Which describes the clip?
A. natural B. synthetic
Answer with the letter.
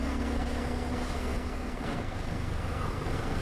B